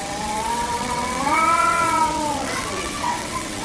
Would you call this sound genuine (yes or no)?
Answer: no